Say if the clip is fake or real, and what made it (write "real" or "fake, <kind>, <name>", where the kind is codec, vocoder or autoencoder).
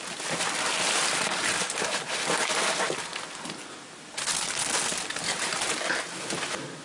real